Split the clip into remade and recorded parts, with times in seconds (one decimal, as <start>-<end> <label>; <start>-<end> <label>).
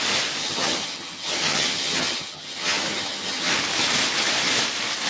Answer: 0.0-0.4 recorded; 0.4-3.5 remade; 3.5-5.1 recorded